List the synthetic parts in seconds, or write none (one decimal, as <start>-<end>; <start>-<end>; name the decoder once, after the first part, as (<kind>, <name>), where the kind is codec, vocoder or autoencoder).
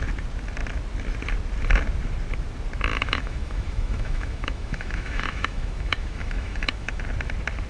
2.9-7.0 (autoencoder, DAC-VAE)